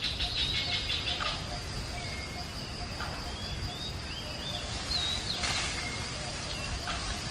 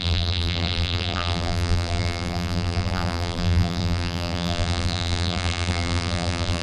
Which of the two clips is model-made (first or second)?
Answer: second